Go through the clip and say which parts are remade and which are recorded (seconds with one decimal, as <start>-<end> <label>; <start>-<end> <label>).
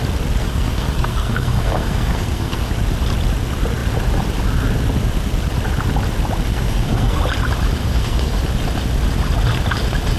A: 0.0-0.4 recorded; 0.4-2.7 remade; 2.7-6.5 recorded; 6.5-7.2 remade; 7.2-7.8 recorded; 7.8-8.4 remade; 8.4-10.2 recorded